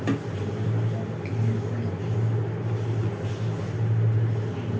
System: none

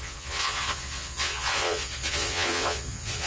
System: vocoder, Vocos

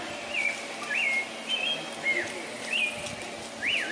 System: none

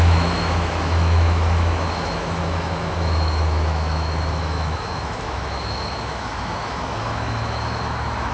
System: autoencoder, DAC-VAE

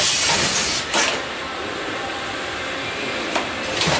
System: vocoder, BigVGAN v2